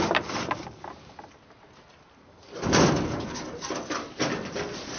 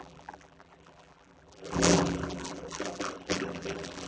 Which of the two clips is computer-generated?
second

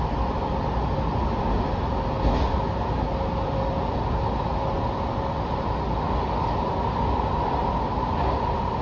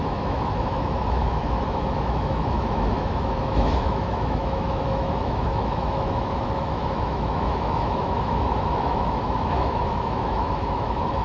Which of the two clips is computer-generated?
second